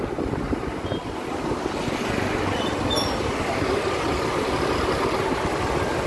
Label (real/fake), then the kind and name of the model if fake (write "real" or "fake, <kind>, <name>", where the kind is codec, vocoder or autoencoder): real